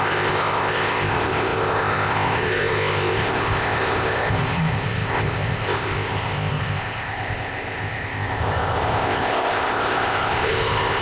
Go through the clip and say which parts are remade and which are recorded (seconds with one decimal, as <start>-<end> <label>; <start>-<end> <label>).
0.0-11.0 remade